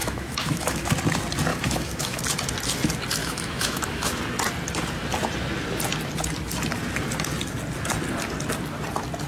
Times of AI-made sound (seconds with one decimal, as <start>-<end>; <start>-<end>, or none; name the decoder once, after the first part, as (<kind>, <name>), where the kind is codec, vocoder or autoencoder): 0.0-0.9 (autoencoder, DAC-VAE); 1.5-2.2; 3.2-4.2